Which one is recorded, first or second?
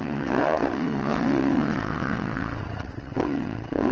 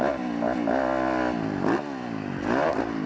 second